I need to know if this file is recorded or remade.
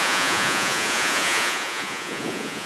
remade